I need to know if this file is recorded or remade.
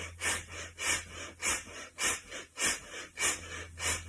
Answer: recorded